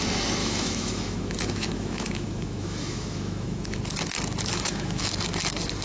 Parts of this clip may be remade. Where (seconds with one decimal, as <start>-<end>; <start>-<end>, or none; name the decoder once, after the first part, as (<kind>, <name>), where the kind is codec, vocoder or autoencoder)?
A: 0.4-3.8 (autoencoder, DAC-VAE); 4.5-5.1